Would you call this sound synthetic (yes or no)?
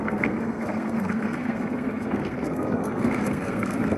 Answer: yes